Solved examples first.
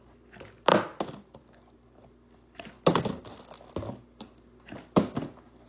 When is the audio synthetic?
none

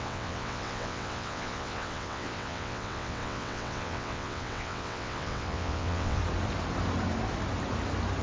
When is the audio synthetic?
0.0-6.2 (vocoder, WaveNeXt)

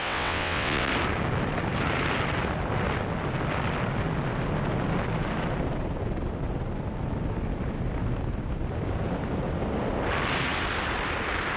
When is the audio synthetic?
0.0-0.9 (vocoder, WaveNeXt)